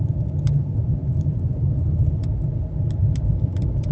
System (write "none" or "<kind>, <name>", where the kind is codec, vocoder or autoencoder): none